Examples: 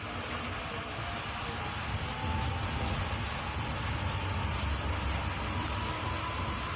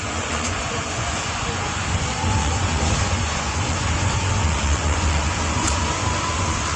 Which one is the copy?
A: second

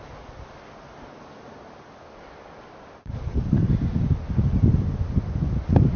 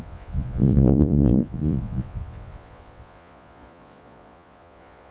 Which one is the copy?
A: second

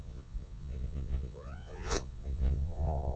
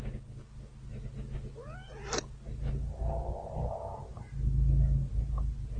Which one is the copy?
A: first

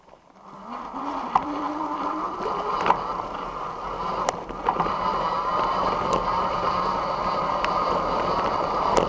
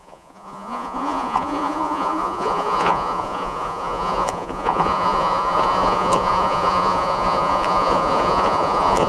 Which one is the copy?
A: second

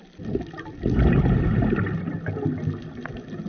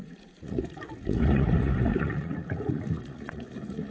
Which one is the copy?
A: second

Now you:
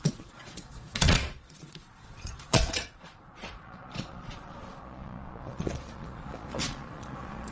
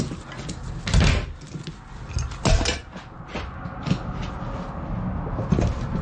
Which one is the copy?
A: first